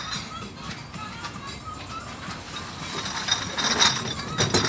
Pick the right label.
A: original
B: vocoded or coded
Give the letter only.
A